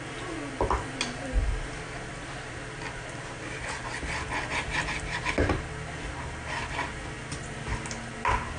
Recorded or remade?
recorded